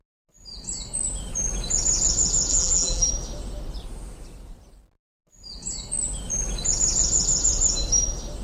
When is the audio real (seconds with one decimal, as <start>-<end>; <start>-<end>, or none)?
0.0-2.5; 3.1-8.4